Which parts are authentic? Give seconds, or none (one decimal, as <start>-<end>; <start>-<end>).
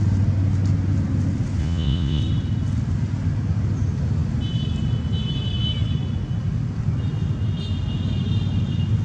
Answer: 0.0-1.6; 2.2-9.0